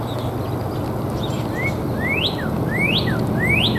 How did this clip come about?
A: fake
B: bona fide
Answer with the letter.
B